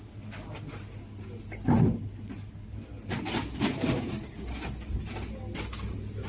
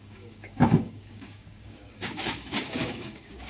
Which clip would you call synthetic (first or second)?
second